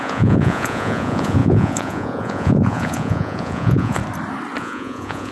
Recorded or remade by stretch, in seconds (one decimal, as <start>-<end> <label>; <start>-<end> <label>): 0.0-4.0 remade; 4.0-4.6 recorded; 4.6-5.3 remade